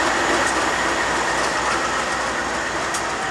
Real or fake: real